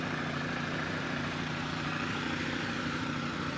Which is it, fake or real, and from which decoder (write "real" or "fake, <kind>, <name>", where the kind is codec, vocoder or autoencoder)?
fake, vocoder, BigVGAN v2